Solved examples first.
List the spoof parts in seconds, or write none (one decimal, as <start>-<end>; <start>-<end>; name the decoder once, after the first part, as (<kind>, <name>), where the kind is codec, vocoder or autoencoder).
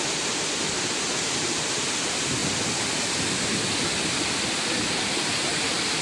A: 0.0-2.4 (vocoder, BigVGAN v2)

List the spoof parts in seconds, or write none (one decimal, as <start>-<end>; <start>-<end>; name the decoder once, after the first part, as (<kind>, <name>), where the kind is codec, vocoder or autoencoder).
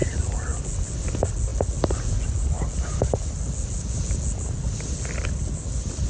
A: none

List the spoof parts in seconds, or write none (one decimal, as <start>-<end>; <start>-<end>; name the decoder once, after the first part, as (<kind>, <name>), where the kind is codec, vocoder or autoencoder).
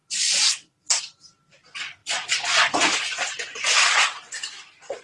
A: 0.0-0.5 (vocoder, BigVGAN v2)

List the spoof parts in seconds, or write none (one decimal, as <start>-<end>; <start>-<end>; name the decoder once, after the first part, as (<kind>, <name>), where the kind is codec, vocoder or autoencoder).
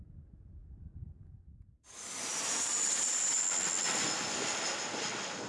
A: 0.6-3.4 (vocoder, BigVGAN v2)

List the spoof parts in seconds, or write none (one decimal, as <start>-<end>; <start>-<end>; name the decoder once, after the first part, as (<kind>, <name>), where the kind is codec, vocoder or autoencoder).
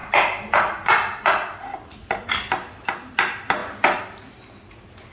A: 3.6-4.2 (vocoder, BigVGAN v2)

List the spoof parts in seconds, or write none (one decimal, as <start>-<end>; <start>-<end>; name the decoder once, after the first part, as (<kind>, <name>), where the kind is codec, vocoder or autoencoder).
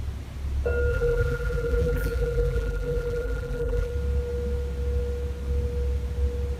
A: 0.9-3.9 (vocoder, BigVGAN v2)